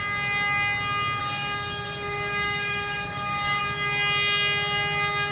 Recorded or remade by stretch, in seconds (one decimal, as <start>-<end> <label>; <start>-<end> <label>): 0.0-1.2 recorded; 1.2-3.6 remade; 3.6-5.3 recorded